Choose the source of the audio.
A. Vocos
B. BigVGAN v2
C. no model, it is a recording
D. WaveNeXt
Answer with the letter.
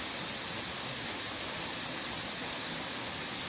C